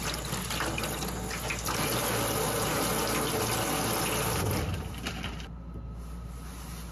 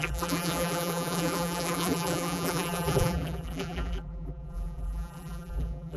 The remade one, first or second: second